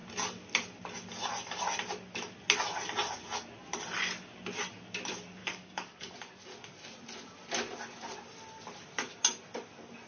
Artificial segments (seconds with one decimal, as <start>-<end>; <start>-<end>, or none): 5.4-6.2